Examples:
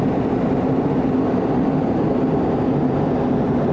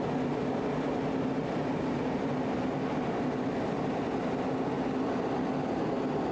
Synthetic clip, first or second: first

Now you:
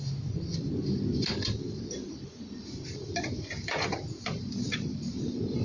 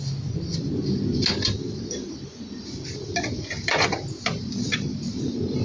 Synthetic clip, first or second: first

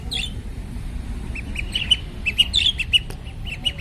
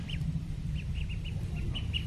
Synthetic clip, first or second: second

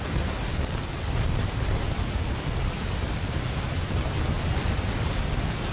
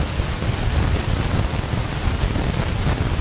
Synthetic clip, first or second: first